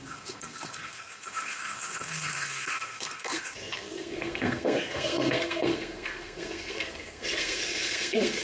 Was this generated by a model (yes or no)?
yes